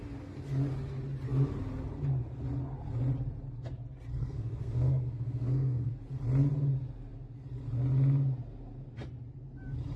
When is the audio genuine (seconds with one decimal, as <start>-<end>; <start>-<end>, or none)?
0.0-4.2; 5.9-10.0